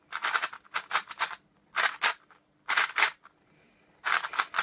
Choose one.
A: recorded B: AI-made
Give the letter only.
A